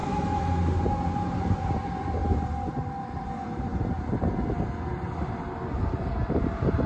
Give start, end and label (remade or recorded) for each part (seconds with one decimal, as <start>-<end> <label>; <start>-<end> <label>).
0.0-0.6 remade; 0.6-6.9 recorded